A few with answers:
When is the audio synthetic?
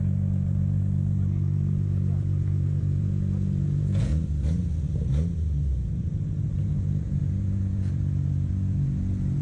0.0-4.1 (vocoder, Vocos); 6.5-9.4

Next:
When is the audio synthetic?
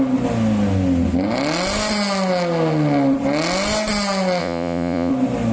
4.4-5.1 (vocoder, Vocos)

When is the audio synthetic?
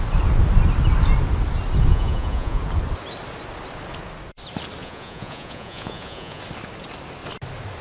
1.9-2.6 (vocoder, Vocos); 4.8-6.4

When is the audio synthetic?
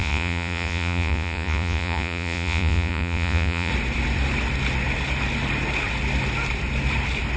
0.0-3.7 (vocoder, Vocos)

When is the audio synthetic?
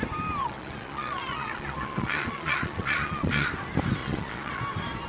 0.4-3.5 (vocoder, Vocos); 4.0-4.6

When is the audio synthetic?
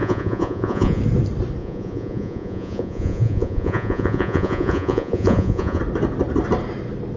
0.0-1.0 (vocoder, Vocos); 1.6-5.8